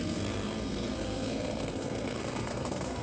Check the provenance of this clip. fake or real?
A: fake